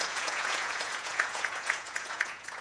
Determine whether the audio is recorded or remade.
remade